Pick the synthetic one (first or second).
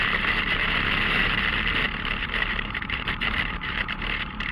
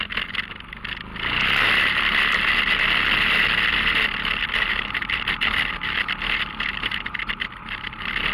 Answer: first